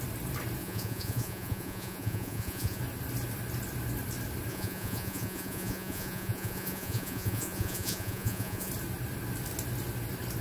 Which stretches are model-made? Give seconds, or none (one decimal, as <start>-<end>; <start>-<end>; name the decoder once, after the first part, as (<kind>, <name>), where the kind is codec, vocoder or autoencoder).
0.6-2.8 (vocoder, Vocos); 4.5-8.7